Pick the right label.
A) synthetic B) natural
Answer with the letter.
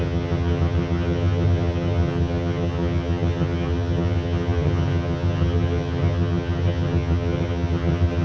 A